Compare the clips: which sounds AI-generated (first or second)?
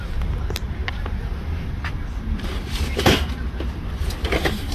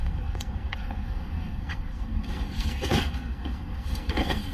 second